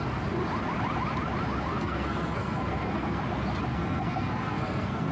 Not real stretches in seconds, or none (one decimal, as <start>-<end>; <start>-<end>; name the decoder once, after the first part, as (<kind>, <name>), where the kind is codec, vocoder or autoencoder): 1.7-3.2 (codec, SNAC); 3.7-5.1